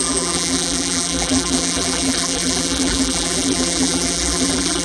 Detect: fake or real fake